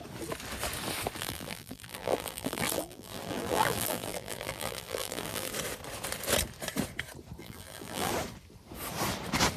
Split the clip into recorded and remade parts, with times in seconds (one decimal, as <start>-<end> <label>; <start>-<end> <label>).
0.0-1.2 recorded; 1.2-5.5 remade; 5.5-7.4 recorded; 7.4-8.1 remade; 8.1-9.6 recorded